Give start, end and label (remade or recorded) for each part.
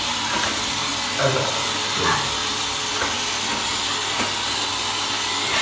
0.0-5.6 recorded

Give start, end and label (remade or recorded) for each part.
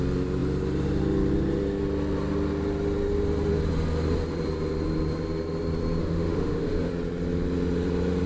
0.0-6.0 recorded; 6.0-6.9 remade; 6.9-8.3 recorded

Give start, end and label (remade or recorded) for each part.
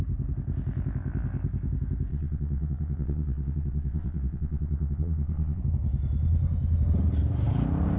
0.0-2.1 recorded; 2.1-5.6 remade; 5.6-8.0 recorded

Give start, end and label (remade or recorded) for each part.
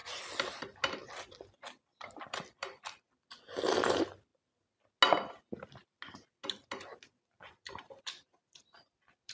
0.0-2.2 recorded; 2.2-4.3 remade; 4.3-8.0 recorded; 8.0-9.3 remade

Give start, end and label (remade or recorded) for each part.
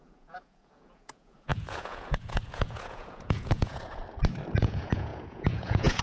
0.0-4.0 remade; 4.0-4.6 recorded; 4.6-6.0 remade